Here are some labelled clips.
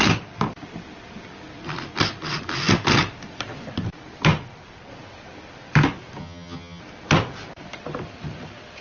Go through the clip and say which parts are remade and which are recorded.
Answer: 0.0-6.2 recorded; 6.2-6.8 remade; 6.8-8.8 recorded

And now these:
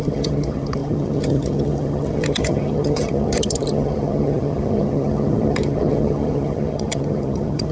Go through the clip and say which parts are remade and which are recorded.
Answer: 0.0-7.7 remade